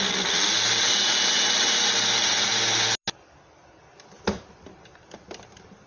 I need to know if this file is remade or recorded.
recorded